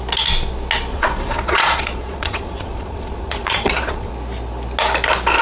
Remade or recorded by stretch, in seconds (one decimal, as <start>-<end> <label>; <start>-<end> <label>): 0.0-0.9 recorded; 0.9-4.1 remade; 4.1-5.4 recorded